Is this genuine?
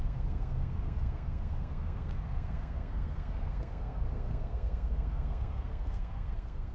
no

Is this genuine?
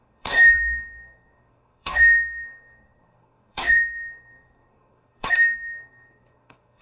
no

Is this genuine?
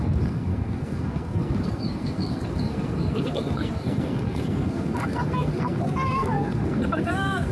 no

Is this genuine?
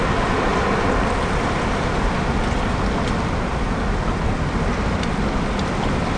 yes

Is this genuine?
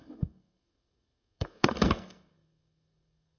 no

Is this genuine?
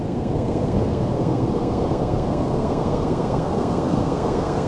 no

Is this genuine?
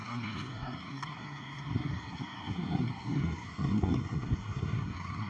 no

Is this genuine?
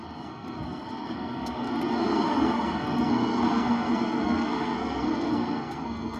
no